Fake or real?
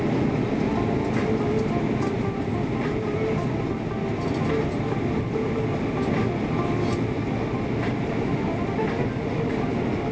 real